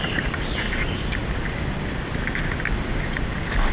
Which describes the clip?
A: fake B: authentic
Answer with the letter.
B